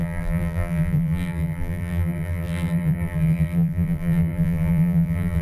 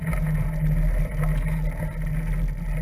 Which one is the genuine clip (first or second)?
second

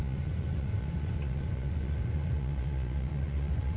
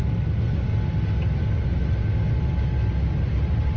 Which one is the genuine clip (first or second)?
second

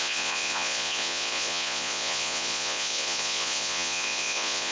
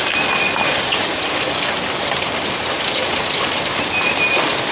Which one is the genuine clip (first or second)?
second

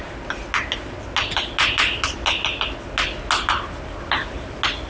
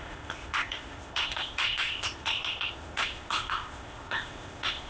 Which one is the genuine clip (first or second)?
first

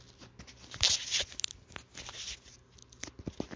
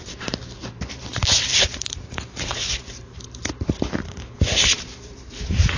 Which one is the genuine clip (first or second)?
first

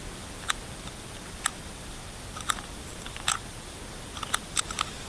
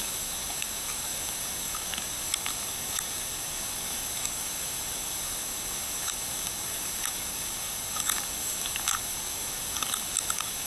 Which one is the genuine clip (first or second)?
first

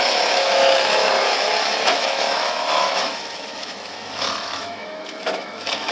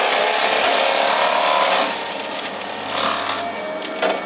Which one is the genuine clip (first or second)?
second